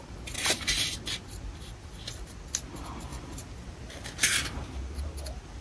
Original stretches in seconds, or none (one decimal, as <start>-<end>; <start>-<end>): 0.0-3.1; 4.8-5.6